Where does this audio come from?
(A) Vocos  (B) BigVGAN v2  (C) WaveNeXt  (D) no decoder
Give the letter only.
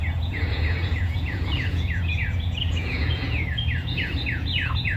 A